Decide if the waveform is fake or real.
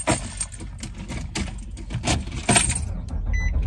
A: real